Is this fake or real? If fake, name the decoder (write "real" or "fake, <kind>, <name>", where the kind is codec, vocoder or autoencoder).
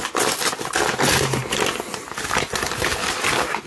real